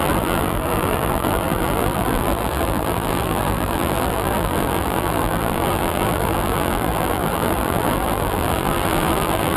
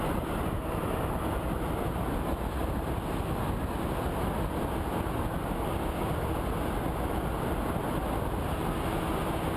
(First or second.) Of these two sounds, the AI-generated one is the first